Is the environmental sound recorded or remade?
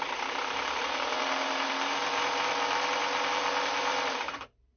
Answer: remade